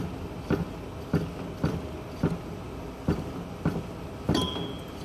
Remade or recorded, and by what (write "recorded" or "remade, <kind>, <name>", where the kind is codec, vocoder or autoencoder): recorded